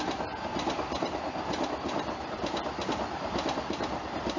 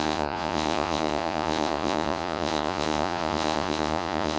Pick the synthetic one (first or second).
second